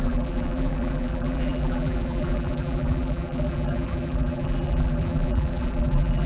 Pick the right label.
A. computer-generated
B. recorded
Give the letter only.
A